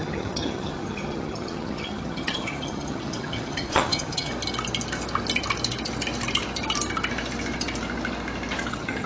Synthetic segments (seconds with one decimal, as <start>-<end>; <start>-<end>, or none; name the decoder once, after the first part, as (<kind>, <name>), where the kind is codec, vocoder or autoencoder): 0.0-4.3 (vocoder, HiFi-GAN); 8.7-9.1